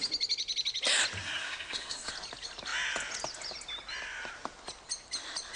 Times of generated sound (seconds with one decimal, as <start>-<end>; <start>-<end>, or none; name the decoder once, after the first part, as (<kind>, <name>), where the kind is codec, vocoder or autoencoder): 1.2-2.1 (codec, SNAC)